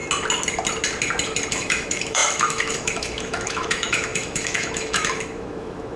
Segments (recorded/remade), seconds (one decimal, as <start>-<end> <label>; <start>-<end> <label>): 0.0-1.5 recorded; 1.5-6.0 remade